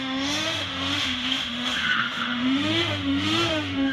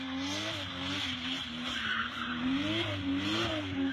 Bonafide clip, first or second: second